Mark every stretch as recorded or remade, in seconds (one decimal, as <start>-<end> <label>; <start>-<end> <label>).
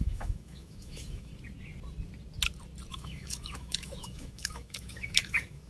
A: 0.0-1.3 remade; 1.3-2.9 recorded; 2.9-5.7 remade